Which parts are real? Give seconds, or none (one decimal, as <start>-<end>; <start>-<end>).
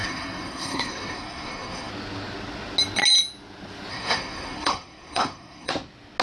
1.9-3.9; 5.7-6.2